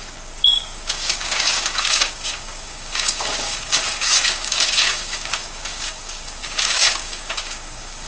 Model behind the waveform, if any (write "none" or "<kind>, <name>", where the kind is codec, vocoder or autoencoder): codec, DAC